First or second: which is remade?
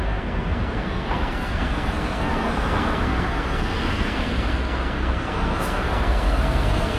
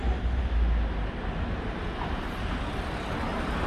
first